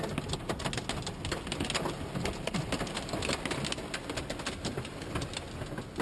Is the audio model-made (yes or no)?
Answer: no